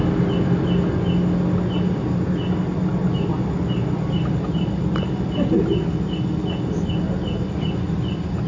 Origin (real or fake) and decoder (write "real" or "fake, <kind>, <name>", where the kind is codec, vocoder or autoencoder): real